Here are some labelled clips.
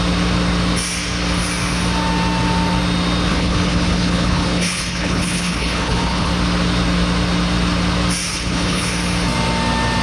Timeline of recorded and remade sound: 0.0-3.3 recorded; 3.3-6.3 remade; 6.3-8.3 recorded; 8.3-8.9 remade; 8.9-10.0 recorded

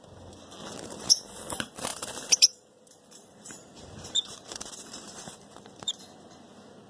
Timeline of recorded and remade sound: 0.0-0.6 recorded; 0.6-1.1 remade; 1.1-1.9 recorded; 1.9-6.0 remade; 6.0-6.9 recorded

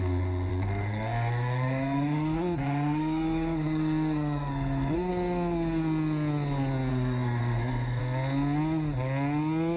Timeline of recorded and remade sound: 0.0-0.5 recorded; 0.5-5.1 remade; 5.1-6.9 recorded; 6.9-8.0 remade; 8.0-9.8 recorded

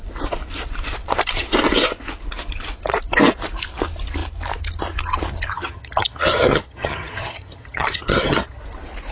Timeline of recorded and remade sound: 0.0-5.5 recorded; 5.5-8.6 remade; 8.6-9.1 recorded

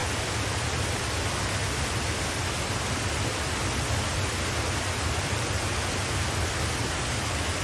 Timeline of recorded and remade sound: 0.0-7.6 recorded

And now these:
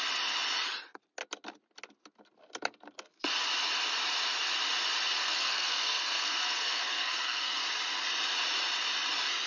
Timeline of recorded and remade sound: 0.0-5.2 recorded; 5.2-7.6 remade; 7.6-9.5 recorded